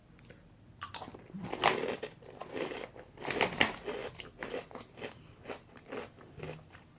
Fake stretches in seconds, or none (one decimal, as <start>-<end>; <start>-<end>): 0.0-1.6; 2.4-3.5; 4.0-4.7